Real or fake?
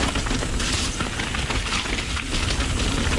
real